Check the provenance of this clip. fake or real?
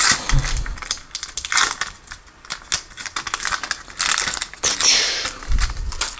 real